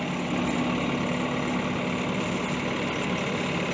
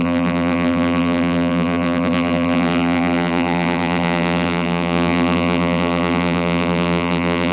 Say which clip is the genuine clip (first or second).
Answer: first